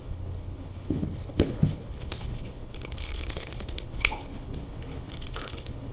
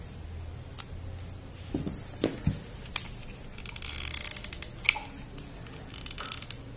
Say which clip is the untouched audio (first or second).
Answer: second